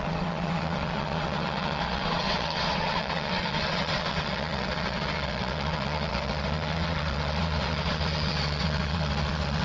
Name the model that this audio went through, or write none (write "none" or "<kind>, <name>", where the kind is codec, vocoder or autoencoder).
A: vocoder, WaveNeXt